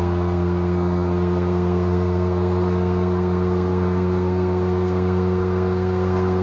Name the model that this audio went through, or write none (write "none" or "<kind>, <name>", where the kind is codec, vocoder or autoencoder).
codec, SNAC